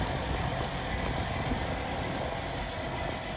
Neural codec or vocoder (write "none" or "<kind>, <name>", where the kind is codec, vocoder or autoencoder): none